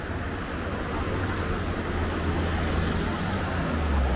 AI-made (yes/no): no